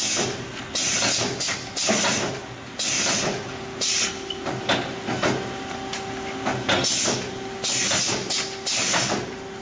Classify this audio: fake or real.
real